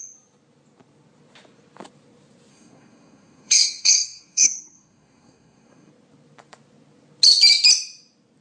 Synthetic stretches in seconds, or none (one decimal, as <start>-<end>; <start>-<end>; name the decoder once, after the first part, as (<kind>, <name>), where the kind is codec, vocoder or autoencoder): 2.5-5.9 (codec, SNAC)